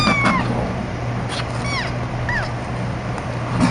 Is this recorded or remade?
recorded